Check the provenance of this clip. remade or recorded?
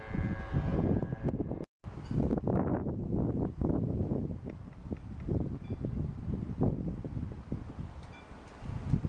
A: recorded